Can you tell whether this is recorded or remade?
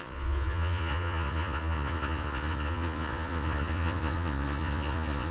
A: remade